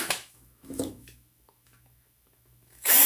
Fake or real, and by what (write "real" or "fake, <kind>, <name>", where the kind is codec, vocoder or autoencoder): fake, autoencoder, DAC-VAE